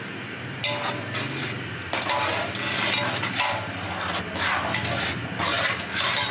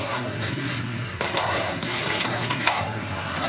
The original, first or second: first